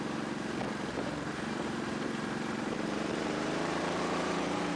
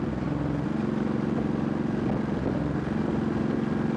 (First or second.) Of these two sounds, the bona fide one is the second